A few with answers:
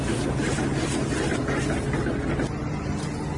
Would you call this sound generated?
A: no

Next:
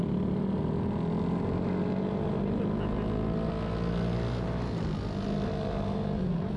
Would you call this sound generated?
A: no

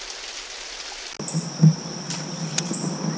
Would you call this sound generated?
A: no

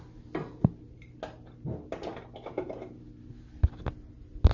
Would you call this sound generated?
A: no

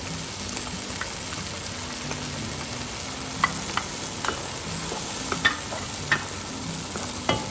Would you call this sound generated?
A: no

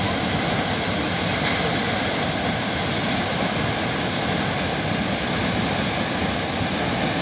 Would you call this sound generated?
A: no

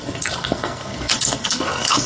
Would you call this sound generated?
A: yes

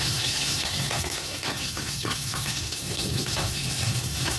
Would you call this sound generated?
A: yes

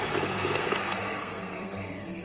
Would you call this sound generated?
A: yes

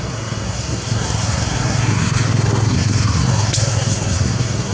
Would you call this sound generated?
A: yes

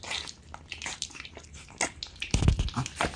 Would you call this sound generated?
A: no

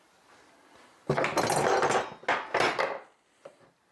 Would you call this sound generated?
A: no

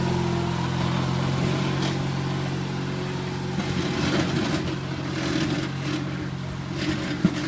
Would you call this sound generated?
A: no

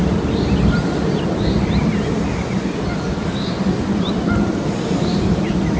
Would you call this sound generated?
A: no